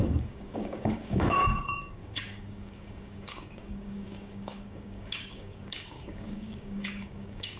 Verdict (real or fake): fake